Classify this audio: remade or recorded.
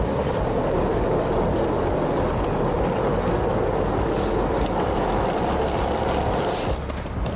recorded